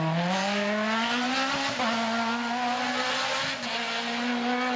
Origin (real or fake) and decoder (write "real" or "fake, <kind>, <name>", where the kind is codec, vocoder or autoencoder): real